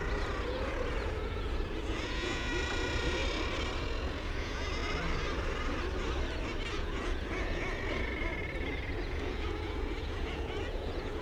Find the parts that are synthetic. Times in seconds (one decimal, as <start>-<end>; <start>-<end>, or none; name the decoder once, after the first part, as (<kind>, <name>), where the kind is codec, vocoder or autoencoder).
0.0-3.2 (vocoder, Vocos); 3.8-4.8; 6.7-11.2